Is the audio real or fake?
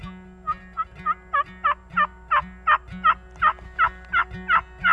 real